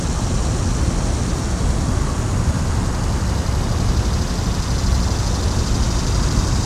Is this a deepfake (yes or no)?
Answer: no